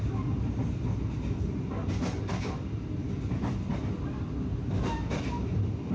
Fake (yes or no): no